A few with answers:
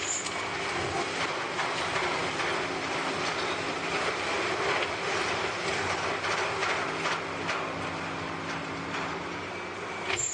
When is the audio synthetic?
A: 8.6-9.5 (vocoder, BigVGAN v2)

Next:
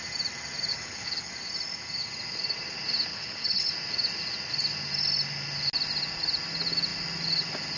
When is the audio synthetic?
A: 0.7-1.3 (codec, HILCodec); 3.1-3.7